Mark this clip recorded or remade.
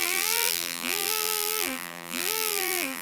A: remade